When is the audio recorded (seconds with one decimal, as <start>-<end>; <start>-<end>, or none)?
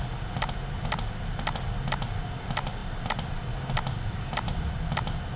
0.0-5.4